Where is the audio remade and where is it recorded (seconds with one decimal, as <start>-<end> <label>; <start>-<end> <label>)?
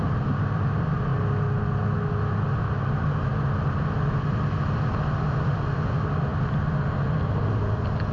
0.0-8.1 recorded